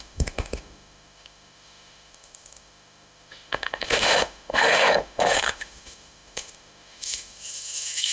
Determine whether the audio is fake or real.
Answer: fake